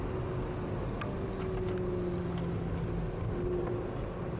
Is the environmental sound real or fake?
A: real